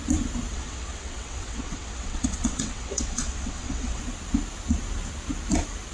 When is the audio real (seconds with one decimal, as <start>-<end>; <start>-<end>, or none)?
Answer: 0.0-0.5; 4.0-5.9